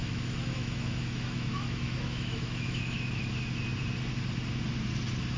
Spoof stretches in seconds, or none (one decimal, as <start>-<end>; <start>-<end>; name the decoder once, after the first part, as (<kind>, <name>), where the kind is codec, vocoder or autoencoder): 0.0-3.2 (autoencoder, DAC-VAE)